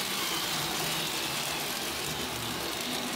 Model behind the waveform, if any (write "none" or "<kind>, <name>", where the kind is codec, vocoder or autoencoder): none